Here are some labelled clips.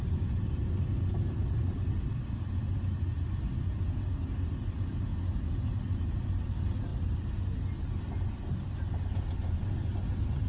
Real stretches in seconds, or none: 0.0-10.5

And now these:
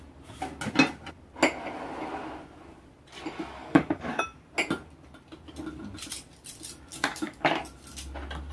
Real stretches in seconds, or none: 0.0-3.6; 4.2-6.9; 7.6-8.5